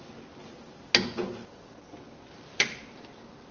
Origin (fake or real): real